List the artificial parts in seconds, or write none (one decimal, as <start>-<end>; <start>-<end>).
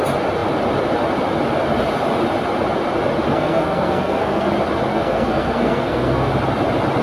3.3-4.5; 4.9-6.3